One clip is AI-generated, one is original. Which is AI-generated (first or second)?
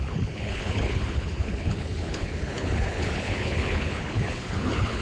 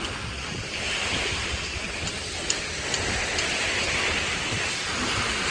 first